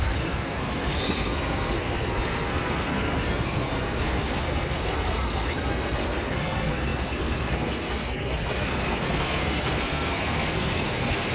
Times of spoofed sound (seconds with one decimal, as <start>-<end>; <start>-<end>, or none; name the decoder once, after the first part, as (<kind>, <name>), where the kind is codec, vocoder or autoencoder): 0.0-11.3 (codec, SNAC)